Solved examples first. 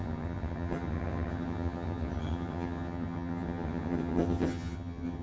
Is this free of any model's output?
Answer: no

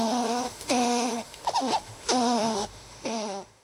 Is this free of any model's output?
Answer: no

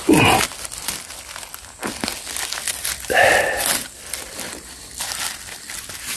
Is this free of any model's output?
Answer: yes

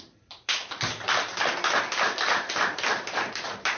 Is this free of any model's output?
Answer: yes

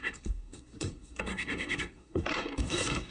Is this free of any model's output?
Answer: no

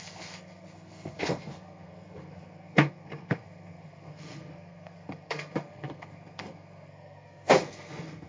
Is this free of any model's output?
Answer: no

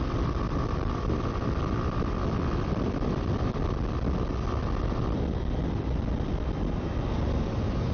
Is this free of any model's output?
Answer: yes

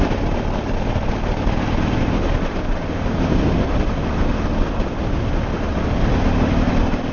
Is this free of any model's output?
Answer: yes